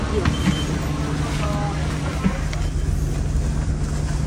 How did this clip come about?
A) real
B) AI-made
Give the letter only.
A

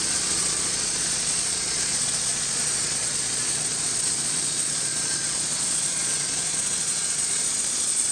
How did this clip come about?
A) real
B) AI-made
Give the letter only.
B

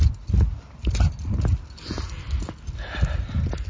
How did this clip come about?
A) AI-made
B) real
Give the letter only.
B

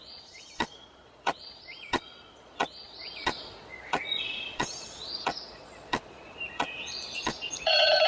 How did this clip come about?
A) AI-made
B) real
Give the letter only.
A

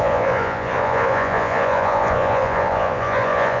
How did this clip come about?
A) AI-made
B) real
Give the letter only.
A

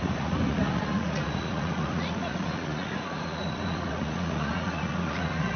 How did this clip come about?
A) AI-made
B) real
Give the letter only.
A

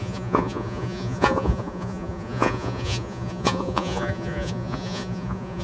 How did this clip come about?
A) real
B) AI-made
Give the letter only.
B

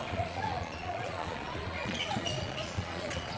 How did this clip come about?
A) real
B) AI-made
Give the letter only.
B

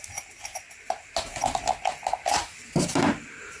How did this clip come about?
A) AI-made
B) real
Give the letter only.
B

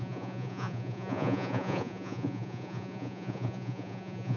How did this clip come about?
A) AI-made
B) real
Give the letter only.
A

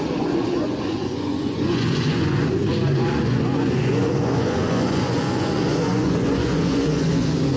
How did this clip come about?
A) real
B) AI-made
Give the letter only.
B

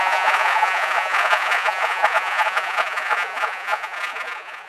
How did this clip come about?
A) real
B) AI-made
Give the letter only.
B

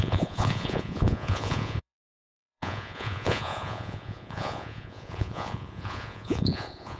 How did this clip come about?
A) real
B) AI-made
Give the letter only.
B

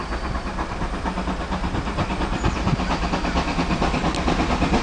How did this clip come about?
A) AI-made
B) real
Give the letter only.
B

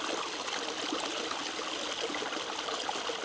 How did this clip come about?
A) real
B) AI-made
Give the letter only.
A